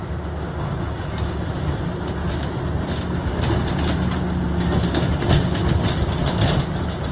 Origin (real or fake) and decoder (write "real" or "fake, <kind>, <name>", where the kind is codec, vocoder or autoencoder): real